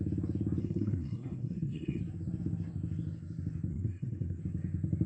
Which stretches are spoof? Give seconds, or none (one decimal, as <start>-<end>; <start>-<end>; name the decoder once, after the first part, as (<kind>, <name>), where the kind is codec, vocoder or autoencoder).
0.6-2.0 (codec, SNAC); 3.7-4.4